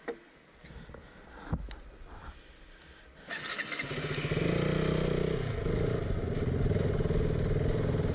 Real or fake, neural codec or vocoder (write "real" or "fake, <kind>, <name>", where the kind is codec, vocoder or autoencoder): real